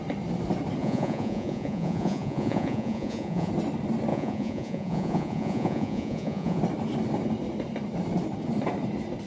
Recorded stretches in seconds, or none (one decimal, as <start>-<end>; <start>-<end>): 0.0-0.8; 3.5-4.1; 6.6-9.3